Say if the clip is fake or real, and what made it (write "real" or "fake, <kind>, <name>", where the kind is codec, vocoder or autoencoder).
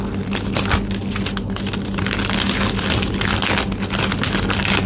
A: real